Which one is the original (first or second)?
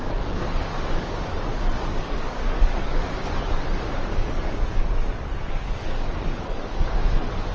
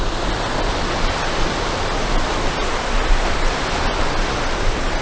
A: second